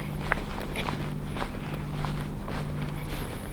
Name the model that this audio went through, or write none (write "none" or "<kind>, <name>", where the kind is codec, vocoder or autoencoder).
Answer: none